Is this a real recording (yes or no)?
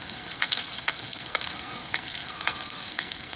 no